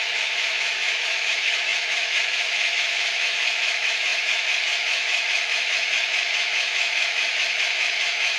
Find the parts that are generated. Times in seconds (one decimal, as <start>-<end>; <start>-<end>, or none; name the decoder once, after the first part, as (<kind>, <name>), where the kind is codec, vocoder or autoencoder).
0.0-8.4 (autoencoder, DAC-VAE)